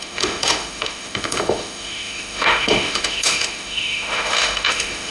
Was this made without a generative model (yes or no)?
no